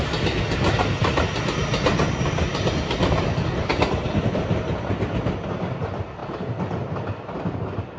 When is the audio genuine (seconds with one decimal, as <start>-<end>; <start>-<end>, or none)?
0.0-8.0